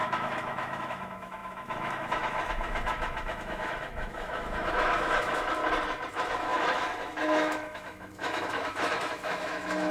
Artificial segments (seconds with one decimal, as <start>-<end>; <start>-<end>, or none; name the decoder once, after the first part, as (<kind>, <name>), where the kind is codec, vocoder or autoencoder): 0.0-5.6 (autoencoder, DAC-VAE); 6.1-9.9